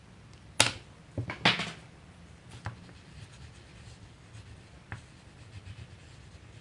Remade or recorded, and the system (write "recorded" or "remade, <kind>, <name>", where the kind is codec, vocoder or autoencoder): recorded